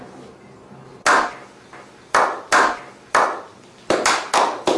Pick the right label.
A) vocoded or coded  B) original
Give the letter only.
B